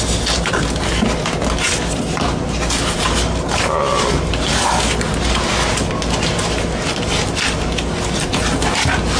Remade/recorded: recorded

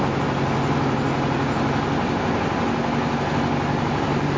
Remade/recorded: recorded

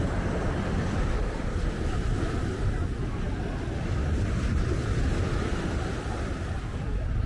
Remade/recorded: recorded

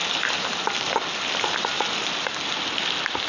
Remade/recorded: recorded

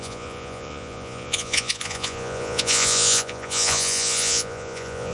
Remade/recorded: remade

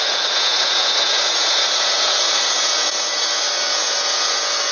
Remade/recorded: remade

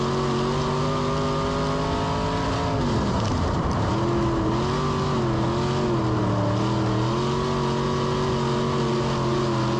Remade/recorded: recorded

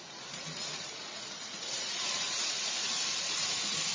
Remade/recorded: remade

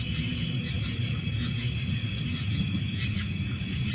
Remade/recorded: remade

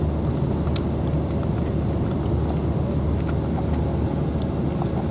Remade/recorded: recorded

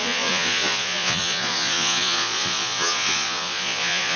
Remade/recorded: remade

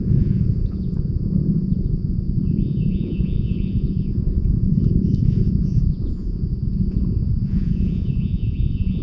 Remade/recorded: remade